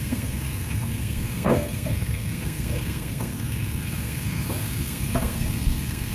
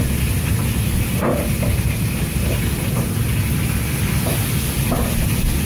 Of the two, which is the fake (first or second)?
first